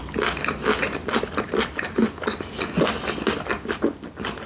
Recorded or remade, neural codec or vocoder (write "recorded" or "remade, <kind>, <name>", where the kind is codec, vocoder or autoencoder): recorded